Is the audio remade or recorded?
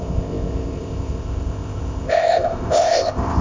remade